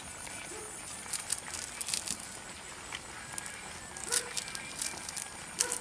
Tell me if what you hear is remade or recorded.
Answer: recorded